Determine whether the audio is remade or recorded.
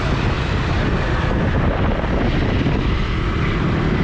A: recorded